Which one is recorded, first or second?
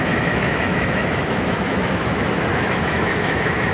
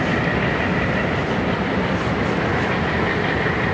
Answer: second